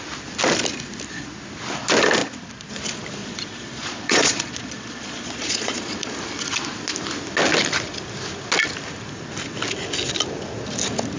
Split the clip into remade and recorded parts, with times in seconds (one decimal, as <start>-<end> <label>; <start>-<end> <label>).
0.0-3.2 recorded; 3.2-6.1 remade; 6.1-11.2 recorded